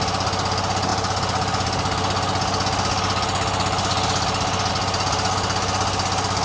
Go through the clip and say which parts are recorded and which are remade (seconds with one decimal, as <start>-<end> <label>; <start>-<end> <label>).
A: 0.0-6.4 recorded